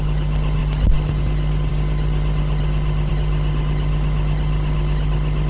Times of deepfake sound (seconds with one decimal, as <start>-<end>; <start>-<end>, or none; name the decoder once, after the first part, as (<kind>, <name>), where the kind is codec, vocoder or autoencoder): none